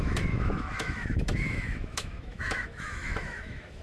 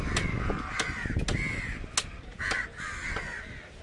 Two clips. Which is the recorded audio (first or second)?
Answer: second